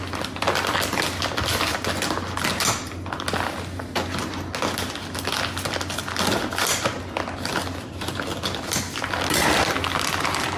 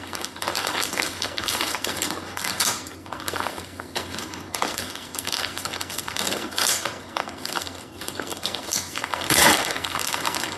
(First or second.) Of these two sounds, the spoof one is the second